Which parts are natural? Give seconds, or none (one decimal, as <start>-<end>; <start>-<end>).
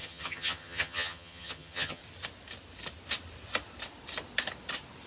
2.0-5.1